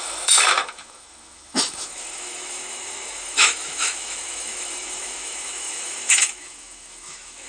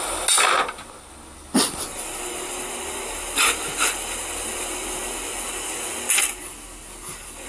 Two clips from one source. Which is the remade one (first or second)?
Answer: first